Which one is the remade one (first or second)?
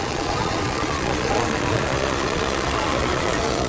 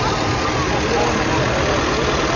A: first